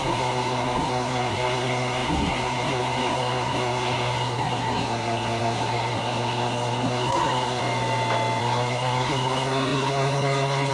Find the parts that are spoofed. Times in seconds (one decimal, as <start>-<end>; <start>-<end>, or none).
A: 0.0-7.6; 8.4-10.7